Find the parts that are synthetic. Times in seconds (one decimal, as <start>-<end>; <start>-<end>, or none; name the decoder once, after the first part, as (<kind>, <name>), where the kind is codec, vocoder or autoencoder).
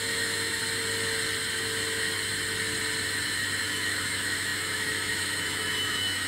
0.0-0.6 (autoencoder, DAC-VAE); 3.6-6.3